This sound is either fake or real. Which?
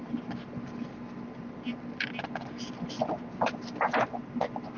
real